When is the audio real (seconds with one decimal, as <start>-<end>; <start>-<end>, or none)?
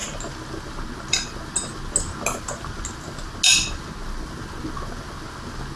0.0-5.8